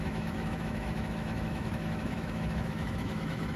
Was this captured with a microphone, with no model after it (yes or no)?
no